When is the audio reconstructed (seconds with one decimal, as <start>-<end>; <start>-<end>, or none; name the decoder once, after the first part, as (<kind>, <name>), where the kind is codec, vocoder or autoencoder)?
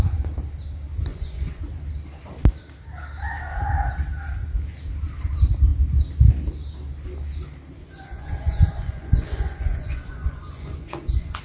1.1-1.6 (vocoder, Vocos); 7.8-11.4